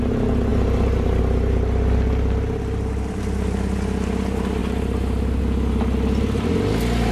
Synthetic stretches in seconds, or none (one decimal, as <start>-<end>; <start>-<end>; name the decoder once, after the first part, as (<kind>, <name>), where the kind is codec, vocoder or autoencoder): 0.5-1.2 (vocoder, BigVGAN v2); 4.6-5.4